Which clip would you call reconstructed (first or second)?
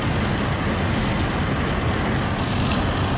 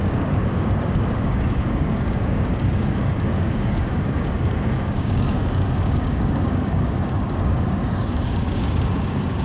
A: second